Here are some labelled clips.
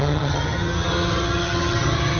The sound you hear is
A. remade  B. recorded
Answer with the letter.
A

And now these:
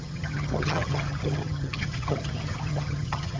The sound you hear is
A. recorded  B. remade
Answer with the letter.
B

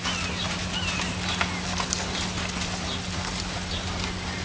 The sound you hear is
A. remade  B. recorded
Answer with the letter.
B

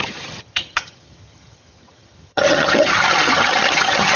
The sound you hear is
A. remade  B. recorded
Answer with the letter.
A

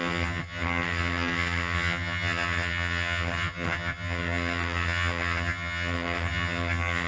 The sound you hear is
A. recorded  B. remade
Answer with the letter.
B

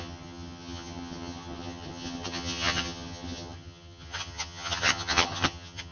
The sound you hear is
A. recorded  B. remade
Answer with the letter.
B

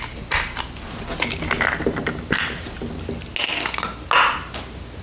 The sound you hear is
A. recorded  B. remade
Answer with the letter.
A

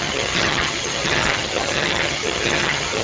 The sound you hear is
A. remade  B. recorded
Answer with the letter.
A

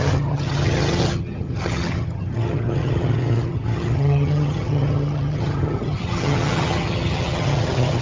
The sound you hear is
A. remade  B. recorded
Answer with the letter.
A